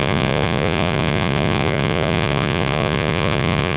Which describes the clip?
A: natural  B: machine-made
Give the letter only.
B